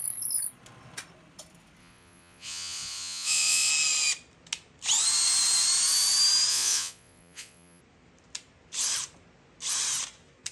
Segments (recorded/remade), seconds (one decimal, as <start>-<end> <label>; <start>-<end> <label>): 0.0-1.8 recorded; 1.8-3.7 remade; 3.7-6.5 recorded; 6.5-7.8 remade; 7.8-10.5 recorded